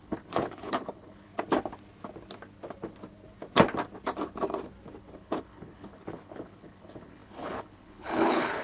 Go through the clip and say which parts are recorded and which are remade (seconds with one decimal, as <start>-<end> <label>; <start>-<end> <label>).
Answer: 0.0-1.3 remade; 1.3-5.0 recorded; 5.0-8.6 remade